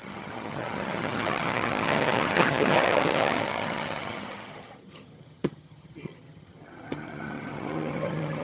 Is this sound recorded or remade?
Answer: remade